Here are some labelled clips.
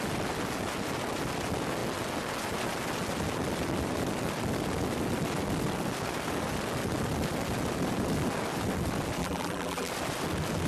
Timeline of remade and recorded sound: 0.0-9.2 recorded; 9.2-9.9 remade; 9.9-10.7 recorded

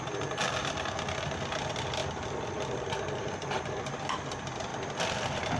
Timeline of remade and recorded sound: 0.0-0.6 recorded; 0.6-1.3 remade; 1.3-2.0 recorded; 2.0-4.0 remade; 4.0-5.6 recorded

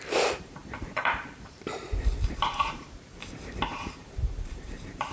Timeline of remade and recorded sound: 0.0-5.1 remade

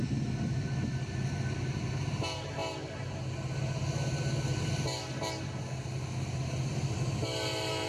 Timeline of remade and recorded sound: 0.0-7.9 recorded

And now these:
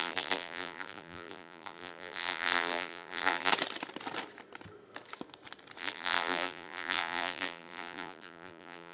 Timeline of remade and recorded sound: 0.0-3.5 remade; 3.5-5.8 recorded; 5.8-8.9 remade

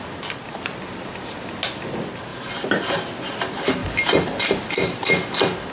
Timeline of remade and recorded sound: 0.0-3.8 recorded; 3.8-5.1 remade; 5.1-5.7 recorded

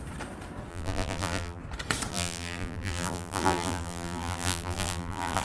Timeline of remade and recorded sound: 0.0-0.7 recorded; 0.7-1.6 remade; 1.6-2.1 recorded; 2.1-5.4 remade

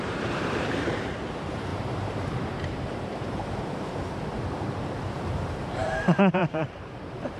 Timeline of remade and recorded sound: 0.0-7.4 remade